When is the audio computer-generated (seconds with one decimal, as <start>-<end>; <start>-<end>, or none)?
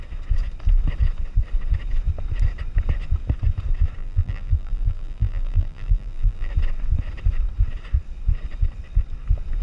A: 4.0-6.5